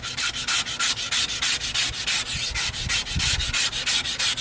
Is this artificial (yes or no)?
no